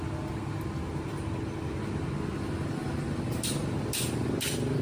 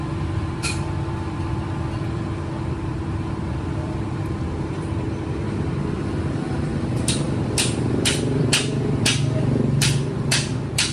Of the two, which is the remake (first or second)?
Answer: second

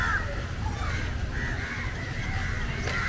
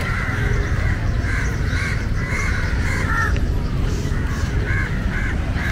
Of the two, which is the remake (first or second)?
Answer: second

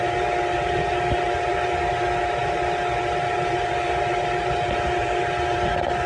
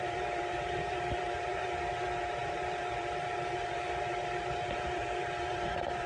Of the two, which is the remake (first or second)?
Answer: second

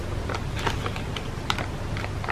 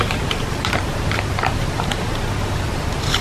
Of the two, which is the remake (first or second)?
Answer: second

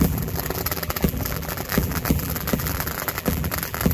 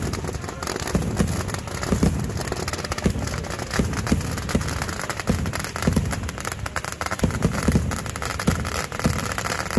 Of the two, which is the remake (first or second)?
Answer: first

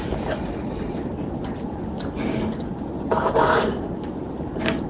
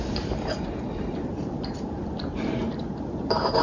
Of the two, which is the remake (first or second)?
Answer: second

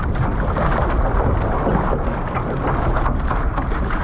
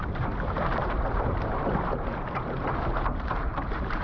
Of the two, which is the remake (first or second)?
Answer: second